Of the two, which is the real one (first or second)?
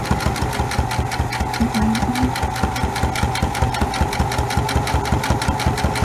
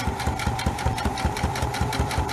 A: first